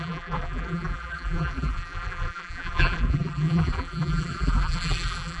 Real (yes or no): no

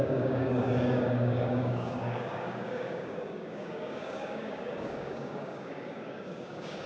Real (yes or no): no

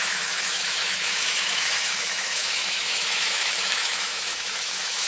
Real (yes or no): no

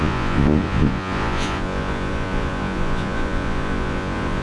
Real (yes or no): no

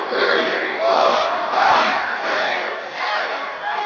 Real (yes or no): no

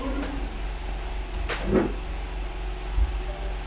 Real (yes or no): yes